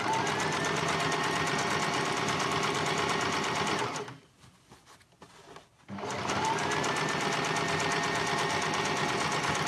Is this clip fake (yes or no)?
no